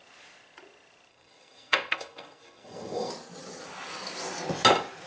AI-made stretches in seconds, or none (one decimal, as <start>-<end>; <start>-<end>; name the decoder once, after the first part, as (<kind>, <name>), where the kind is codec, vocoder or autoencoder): 1.1-3.1 (codec, SNAC)